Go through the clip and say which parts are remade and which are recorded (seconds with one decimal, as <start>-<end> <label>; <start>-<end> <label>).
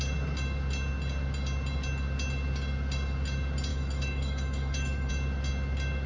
0.0-3.7 recorded; 3.7-5.1 remade; 5.1-6.1 recorded